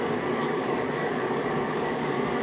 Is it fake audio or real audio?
fake